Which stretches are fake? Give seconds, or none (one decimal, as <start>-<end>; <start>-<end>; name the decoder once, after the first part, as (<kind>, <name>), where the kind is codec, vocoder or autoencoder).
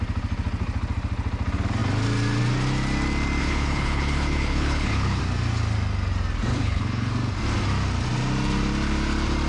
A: 3.4-5.2 (codec, HILCodec); 6.5-7.1